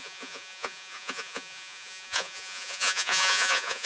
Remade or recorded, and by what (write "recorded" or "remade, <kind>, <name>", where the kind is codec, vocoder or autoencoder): remade, vocoder, Vocos